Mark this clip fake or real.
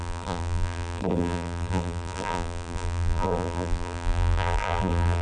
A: fake